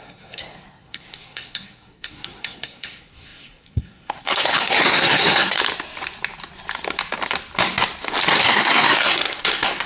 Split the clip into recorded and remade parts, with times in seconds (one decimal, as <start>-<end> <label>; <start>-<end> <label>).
0.0-5.6 remade; 5.6-8.4 recorded; 8.4-9.9 remade